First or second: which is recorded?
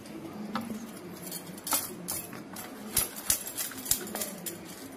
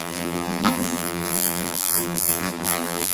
first